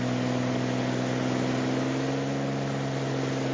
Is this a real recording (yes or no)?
yes